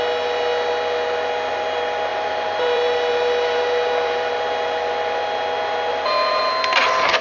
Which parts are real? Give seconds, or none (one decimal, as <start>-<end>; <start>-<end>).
0.0-2.1; 4.3-5.9; 6.4-7.2